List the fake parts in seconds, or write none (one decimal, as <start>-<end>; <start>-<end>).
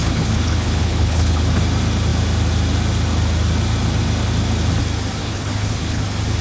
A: 0.0-1.4; 5.2-6.0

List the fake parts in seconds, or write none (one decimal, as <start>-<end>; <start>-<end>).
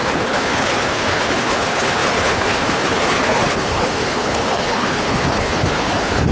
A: 0.0-6.3